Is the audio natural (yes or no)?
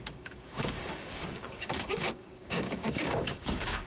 no